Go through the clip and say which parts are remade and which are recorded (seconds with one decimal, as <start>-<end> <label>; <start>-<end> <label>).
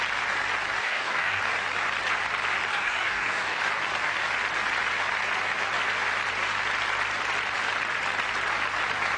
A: 0.0-0.8 recorded; 0.8-1.4 remade; 1.4-2.7 recorded; 2.7-3.6 remade; 3.6-9.2 recorded